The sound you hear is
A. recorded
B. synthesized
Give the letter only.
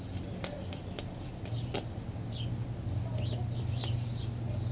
A